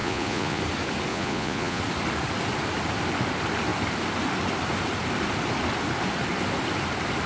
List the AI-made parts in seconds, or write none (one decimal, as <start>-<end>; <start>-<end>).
0.0-0.6; 1.1-1.8